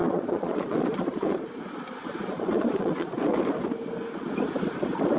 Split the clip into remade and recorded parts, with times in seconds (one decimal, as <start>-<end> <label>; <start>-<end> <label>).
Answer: 0.0-1.4 remade; 1.4-2.2 recorded; 2.2-3.2 remade; 3.2-5.2 recorded